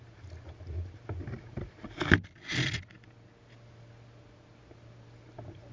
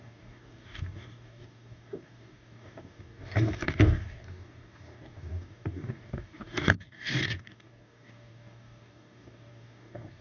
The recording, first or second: first